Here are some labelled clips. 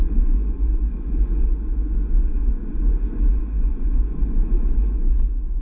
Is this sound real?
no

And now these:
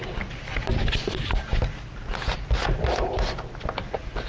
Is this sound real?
yes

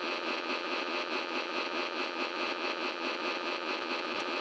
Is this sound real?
no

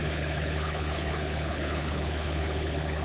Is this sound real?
no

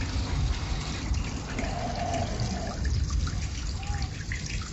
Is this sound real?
yes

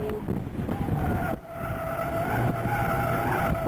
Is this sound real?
yes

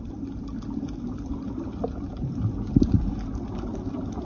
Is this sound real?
yes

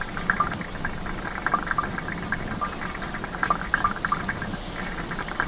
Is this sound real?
yes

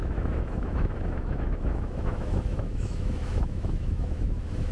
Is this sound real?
no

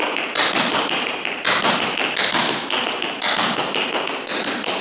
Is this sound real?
yes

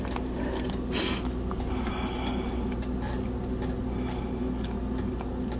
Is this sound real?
yes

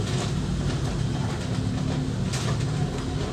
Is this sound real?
yes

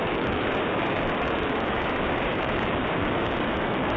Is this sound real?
no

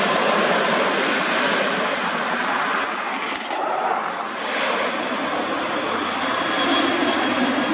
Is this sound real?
yes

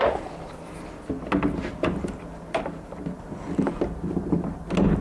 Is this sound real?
yes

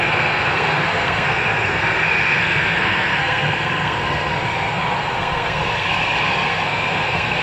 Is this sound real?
no